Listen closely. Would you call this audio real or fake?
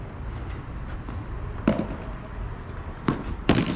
real